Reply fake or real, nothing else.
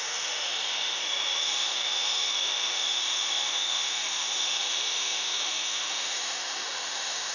fake